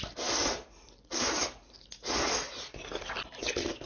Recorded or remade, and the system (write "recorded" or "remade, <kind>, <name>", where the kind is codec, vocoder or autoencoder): recorded